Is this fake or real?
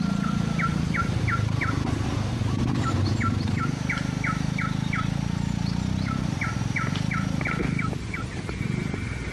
real